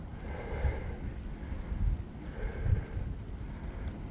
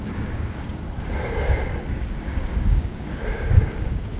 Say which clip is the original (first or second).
first